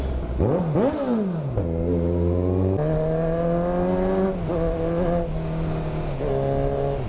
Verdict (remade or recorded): recorded